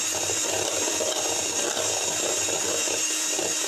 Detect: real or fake fake